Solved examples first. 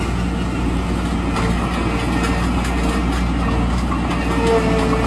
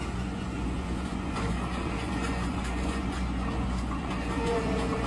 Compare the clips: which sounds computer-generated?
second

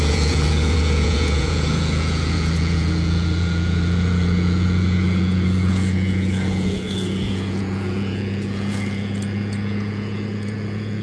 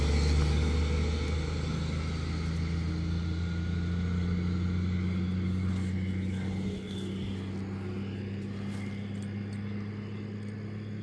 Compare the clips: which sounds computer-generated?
first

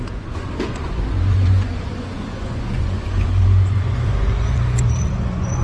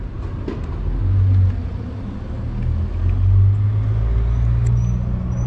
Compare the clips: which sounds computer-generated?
first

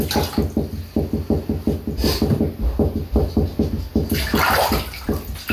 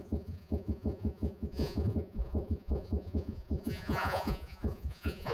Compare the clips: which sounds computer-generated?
second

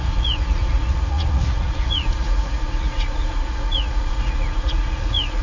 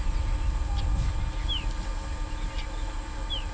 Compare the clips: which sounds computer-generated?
first